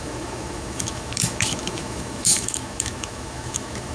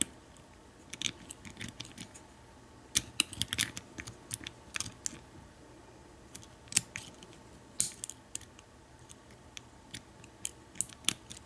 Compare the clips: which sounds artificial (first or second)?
first